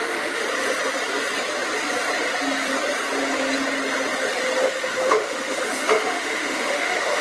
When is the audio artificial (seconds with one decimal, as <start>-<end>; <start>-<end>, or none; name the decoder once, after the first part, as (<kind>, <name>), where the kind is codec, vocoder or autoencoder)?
0.0-0.4 (autoencoder, DAC-VAE); 4.7-7.2